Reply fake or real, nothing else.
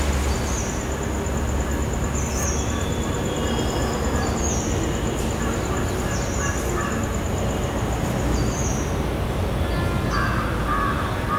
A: real